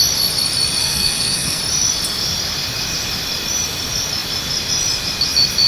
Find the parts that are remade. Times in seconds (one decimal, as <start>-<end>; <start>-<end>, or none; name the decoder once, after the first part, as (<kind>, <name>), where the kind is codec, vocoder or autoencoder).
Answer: 0.8-1.6 (codec, SNAC)